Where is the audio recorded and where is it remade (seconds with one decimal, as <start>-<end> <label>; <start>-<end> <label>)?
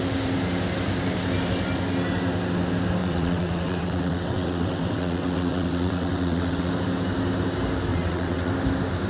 0.0-3.0 recorded; 3.0-6.7 remade; 6.7-7.9 recorded; 7.9-8.5 remade; 8.5-9.1 recorded